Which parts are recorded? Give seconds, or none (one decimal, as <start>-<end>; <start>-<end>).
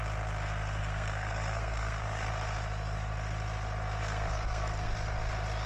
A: 0.0-0.8; 2.3-4.0; 4.9-5.7